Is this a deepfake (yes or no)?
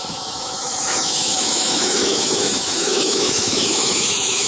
yes